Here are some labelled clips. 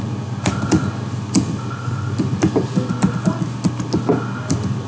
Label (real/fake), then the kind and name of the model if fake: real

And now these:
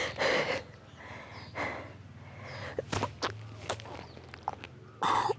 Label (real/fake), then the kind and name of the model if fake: real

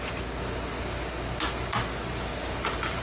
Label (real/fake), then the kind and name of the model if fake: real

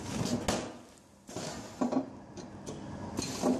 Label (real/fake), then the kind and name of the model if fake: real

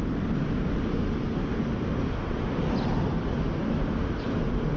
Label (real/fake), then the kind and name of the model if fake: real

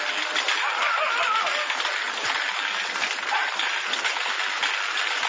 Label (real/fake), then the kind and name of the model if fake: real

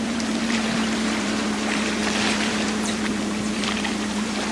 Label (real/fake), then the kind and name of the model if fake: fake, vocoder, BigVGAN v2